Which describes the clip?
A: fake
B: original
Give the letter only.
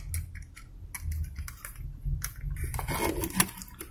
B